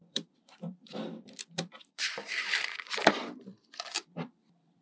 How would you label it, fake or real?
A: fake